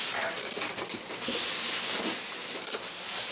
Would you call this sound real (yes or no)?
yes